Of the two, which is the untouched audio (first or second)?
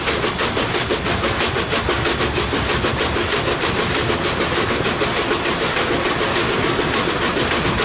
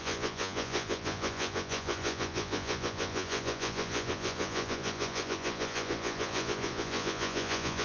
first